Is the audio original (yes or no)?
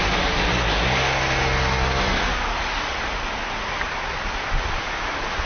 yes